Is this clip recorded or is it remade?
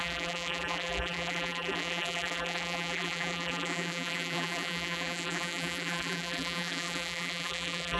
remade